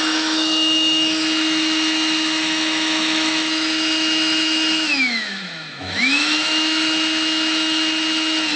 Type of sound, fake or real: fake